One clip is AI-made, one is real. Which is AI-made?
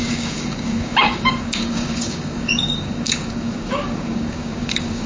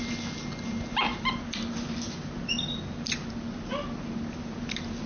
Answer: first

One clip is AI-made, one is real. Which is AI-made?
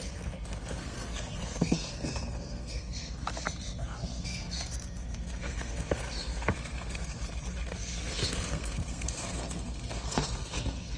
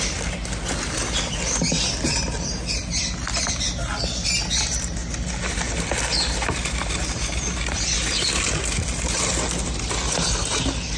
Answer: first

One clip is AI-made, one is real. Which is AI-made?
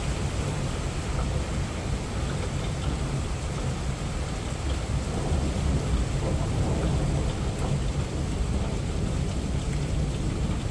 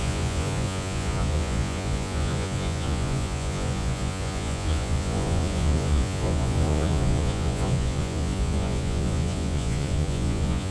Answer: second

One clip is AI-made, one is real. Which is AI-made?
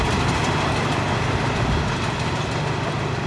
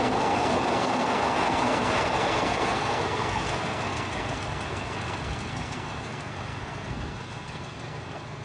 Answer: second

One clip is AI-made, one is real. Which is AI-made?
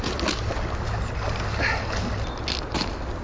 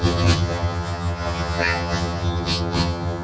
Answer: second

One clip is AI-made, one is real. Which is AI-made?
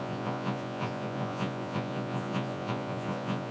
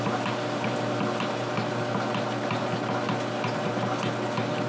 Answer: first